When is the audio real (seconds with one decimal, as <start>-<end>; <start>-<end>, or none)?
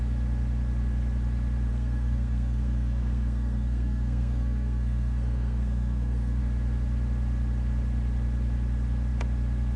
0.0-1.7; 6.4-9.8